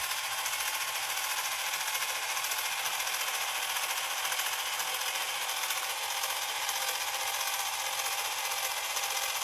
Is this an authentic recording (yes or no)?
yes